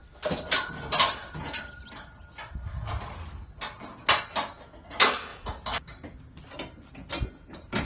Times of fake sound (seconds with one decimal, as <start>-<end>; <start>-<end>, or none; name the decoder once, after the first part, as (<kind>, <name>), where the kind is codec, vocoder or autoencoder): none